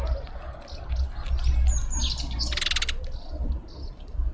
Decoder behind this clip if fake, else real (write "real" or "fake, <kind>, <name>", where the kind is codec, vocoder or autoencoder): real